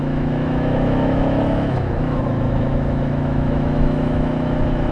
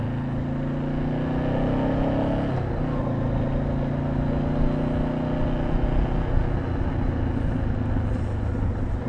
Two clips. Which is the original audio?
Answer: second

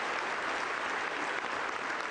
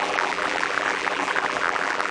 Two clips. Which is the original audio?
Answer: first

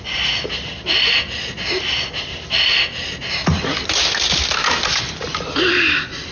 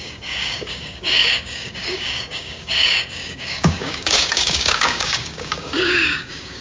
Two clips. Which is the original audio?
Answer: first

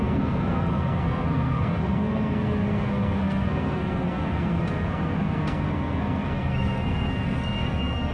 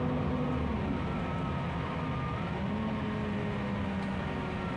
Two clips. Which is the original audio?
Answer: second